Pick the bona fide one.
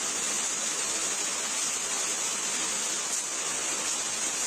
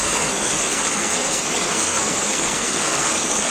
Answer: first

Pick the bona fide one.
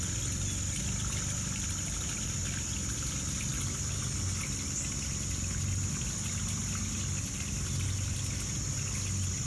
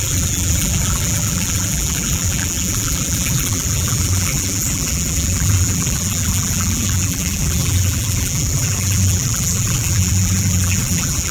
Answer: first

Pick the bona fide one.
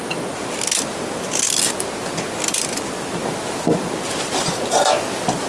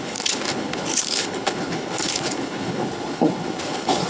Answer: first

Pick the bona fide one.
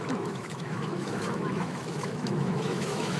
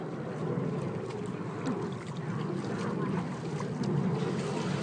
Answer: second